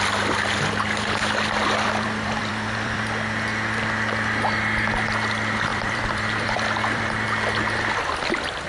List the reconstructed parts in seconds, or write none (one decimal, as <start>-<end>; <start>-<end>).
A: 1.6-3.0; 5.7-7.0